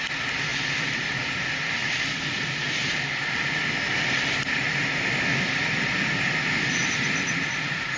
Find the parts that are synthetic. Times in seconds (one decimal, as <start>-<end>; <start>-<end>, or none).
none